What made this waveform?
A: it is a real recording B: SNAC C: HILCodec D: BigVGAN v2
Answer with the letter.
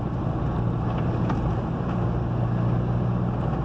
A